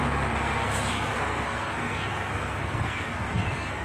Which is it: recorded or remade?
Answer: remade